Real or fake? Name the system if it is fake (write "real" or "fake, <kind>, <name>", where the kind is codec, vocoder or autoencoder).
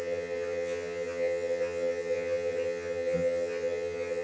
fake, vocoder, HiFi-GAN